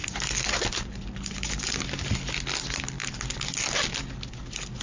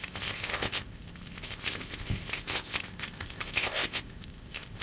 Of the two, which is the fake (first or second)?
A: second